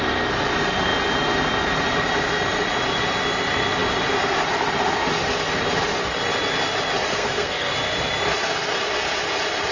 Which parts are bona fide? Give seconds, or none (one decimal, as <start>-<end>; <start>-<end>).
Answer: 0.0-7.1; 7.7-9.7